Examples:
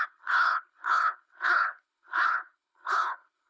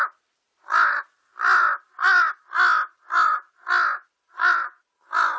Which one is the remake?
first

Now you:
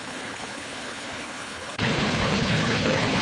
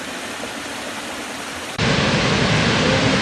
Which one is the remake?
first